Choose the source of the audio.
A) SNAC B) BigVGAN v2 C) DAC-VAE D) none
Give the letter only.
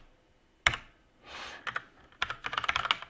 D